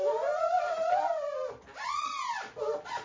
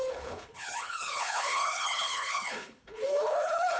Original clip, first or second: first